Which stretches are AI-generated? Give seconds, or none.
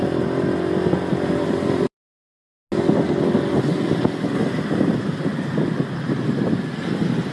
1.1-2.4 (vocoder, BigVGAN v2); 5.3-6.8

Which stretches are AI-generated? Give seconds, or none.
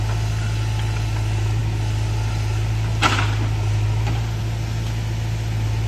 none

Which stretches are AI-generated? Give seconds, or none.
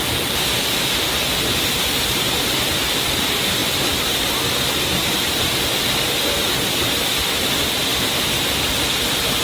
3.6-4.4 (vocoder, BigVGAN v2); 6.8-7.4; 7.9-8.7